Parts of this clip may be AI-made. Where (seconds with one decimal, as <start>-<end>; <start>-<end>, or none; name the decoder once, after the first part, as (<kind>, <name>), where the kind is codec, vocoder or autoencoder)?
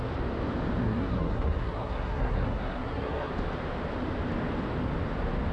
0.8-3.3 (codec, SNAC)